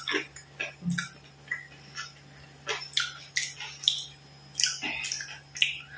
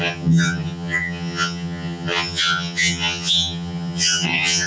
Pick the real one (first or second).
first